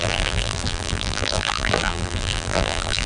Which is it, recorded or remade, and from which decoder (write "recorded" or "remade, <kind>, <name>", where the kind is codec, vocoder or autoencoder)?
remade, vocoder, BigVGAN v2